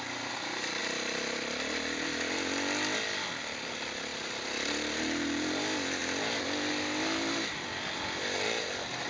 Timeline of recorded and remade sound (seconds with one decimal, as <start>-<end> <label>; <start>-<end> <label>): 0.0-9.1 recorded